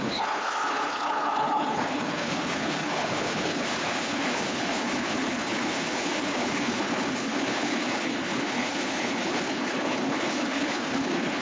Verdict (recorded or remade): remade